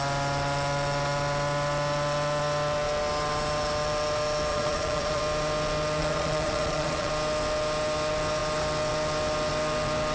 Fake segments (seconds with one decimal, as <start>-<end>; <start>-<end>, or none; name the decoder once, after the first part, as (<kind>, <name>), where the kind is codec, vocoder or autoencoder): 4.5-5.2 (vocoder, Vocos); 6.0-7.1